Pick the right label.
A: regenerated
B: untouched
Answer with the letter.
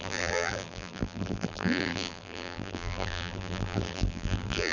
A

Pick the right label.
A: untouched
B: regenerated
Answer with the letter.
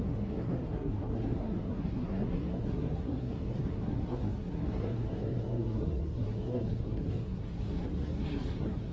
B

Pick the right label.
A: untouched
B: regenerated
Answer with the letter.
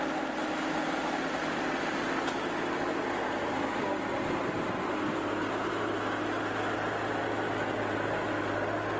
A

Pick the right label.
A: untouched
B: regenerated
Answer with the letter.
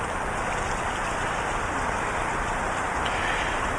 A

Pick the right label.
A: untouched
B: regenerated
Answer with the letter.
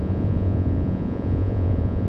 B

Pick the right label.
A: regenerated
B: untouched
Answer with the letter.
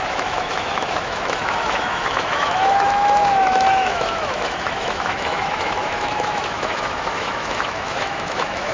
A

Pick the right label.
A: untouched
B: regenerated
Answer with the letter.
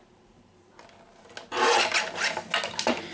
A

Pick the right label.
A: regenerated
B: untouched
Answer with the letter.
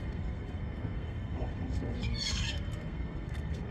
A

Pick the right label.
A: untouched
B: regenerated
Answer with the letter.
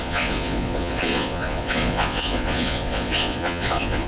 B